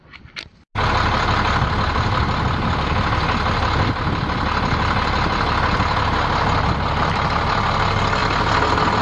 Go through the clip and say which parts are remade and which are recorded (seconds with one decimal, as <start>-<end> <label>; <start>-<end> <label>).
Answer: 0.0-9.0 recorded